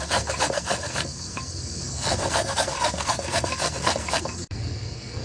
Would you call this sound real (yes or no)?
no